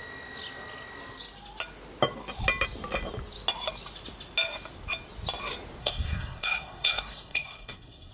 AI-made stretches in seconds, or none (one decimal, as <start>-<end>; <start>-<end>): 5.8-8.1